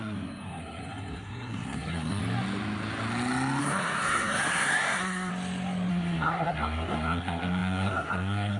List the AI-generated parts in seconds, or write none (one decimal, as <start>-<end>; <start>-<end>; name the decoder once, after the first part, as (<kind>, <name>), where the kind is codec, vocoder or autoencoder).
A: 0.0-2.2 (codec, SNAC); 3.6-5.3; 5.9-8.6